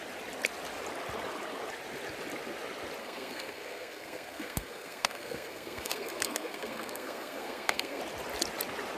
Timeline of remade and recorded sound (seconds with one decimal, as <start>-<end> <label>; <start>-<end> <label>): 0.0-3.0 recorded; 3.0-8.0 remade; 8.0-9.0 recorded

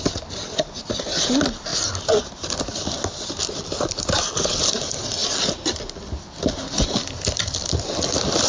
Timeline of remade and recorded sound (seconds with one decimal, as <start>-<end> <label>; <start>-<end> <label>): 0.0-8.5 recorded

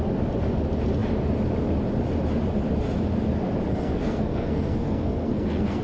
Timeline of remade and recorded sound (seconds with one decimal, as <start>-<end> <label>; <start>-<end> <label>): 0.0-3.7 recorded; 3.7-5.8 remade

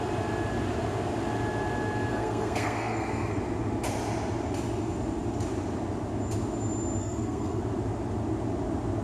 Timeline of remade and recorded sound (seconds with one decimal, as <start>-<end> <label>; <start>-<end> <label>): 0.0-2.1 recorded; 2.1-3.4 remade; 3.4-7.0 recorded; 7.0-7.6 remade; 7.6-9.0 recorded